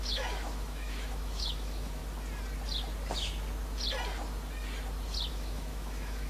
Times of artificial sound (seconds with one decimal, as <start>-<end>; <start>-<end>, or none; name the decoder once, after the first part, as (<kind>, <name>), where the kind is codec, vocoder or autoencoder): 0.0-2.0 (autoencoder, DAC-VAE); 5.3-6.3

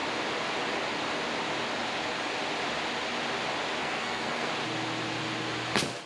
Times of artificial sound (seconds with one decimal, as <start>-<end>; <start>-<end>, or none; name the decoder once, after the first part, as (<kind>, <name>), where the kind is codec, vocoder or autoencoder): 3.8-4.5 (codec, SNAC)

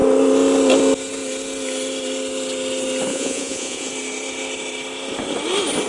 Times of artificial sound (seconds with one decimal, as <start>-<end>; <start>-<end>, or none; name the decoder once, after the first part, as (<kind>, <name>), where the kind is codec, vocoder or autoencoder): 3.1-3.9 (vocoder, Vocos)

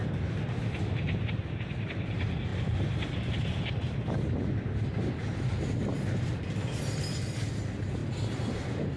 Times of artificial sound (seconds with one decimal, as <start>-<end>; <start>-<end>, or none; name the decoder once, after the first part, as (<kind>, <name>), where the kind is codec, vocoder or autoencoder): 0.0-5.2 (vocoder, BigVGAN v2); 6.3-8.0

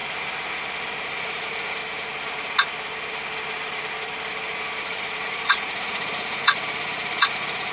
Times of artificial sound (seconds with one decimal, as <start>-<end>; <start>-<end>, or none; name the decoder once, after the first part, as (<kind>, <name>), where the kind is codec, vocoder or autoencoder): 1.1-1.8 (vocoder, Vocos); 4.8-7.7

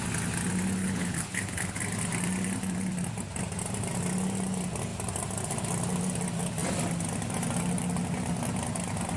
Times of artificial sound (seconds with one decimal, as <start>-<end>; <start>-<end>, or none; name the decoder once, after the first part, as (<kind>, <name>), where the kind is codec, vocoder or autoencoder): 0.8-1.8 (codec, HILCodec)

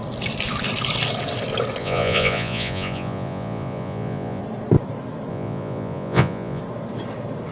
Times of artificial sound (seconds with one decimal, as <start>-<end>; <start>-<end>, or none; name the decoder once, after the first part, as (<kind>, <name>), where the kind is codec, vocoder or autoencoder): 1.8-4.4 (vocoder, Vocos); 5.3-6.6

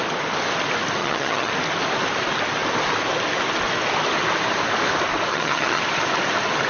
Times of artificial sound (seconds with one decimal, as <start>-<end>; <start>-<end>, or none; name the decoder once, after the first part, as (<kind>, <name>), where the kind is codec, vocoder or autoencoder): 1.0-1.5 (vocoder, HiFi-GAN); 5.3-5.8